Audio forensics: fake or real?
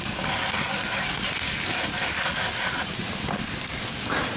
real